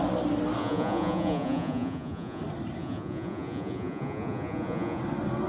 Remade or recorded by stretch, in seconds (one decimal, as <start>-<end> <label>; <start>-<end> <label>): 0.0-0.6 recorded; 0.6-2.4 remade; 2.4-2.8 recorded; 2.8-5.0 remade; 5.0-5.5 recorded